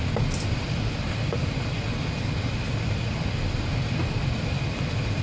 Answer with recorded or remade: recorded